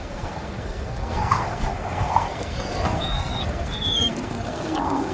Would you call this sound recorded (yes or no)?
no